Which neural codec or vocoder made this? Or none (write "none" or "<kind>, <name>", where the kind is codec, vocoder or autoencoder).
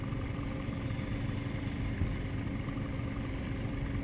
none